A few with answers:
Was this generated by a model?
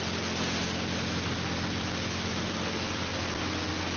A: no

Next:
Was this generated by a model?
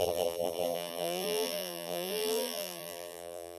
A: yes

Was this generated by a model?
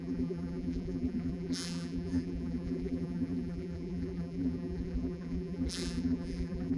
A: yes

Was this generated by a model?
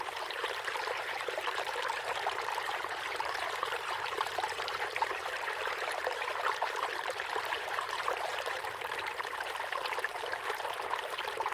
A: yes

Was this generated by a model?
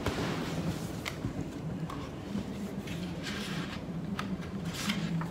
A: yes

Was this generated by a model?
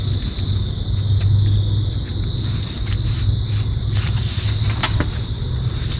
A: no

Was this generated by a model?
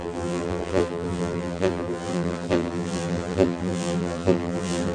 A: yes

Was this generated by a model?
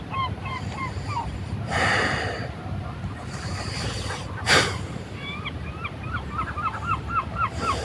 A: yes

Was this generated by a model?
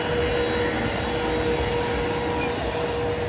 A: no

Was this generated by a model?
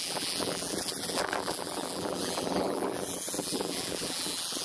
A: yes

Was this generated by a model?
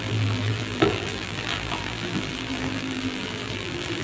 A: yes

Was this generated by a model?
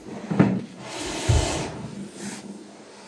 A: no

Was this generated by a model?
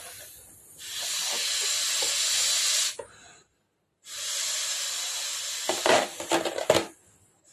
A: no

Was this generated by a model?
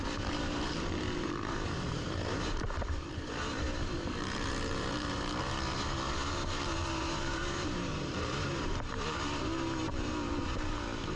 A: yes